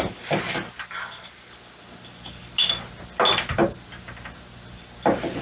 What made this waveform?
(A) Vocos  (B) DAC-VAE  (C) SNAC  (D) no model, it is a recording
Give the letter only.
D